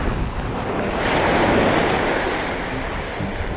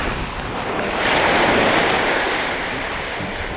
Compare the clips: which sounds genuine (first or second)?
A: first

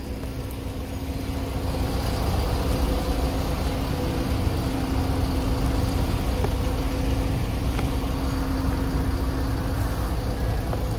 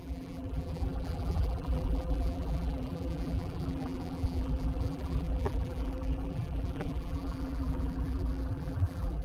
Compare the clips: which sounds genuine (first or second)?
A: first